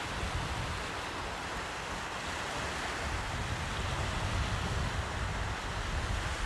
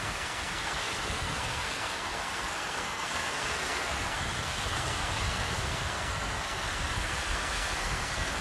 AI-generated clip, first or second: second